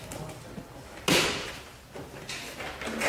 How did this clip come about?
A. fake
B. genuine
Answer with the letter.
B